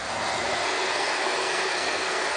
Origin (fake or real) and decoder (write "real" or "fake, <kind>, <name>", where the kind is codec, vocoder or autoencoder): fake, codec, SNAC